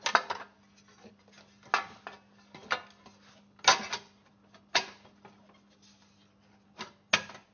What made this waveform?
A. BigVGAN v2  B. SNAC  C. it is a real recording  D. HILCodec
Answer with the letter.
C